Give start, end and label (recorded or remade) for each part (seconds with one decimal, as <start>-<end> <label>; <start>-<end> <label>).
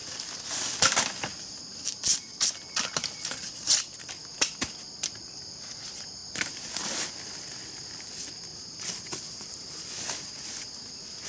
0.0-11.3 recorded